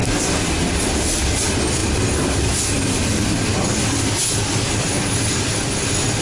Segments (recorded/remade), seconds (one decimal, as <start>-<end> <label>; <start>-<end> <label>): 0.0-3.1 recorded; 3.1-3.6 remade; 3.6-6.2 recorded